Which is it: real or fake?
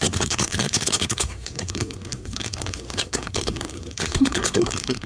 fake